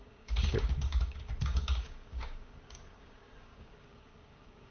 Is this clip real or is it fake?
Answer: fake